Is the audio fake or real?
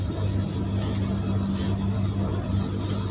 real